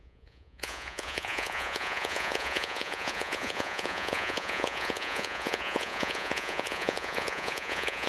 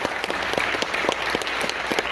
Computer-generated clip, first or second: first